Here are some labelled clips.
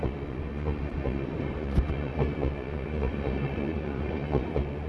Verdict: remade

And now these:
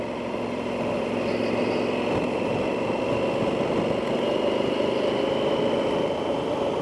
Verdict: recorded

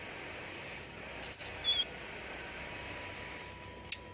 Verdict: recorded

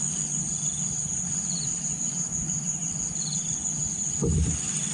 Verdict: recorded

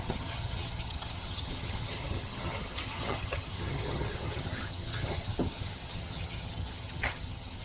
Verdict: remade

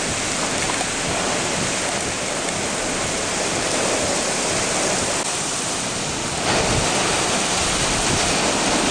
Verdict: recorded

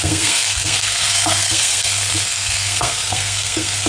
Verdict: remade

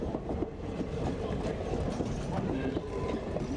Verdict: recorded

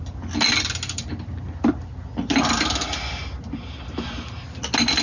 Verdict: recorded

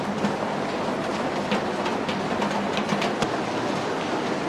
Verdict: recorded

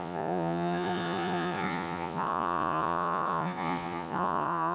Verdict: remade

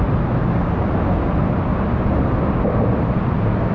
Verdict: recorded